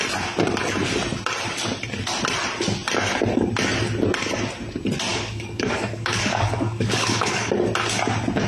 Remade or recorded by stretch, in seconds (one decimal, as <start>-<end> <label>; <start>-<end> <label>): 0.0-5.1 recorded; 5.1-7.5 remade; 7.5-8.5 recorded